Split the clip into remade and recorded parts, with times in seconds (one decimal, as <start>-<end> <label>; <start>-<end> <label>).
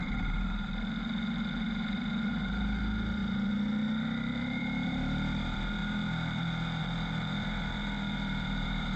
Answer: 0.0-0.7 remade; 0.7-1.5 recorded; 1.5-3.2 remade; 3.2-4.3 recorded; 4.3-5.8 remade; 5.8-6.8 recorded; 6.8-9.0 remade